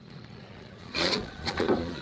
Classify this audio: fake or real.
fake